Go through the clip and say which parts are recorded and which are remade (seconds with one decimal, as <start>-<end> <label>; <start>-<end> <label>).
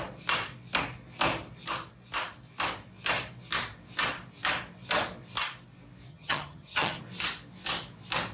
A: 0.0-6.1 recorded; 6.1-7.0 remade; 7.0-8.3 recorded